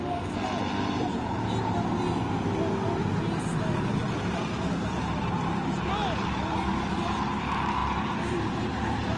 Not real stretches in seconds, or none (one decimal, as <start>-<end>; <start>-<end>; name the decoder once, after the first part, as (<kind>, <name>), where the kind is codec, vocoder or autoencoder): 4.0-5.9 (vocoder, BigVGAN v2); 7.8-8.6